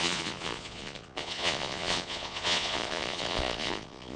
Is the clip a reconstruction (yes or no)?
yes